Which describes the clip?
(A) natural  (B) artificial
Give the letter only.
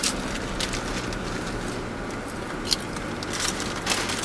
A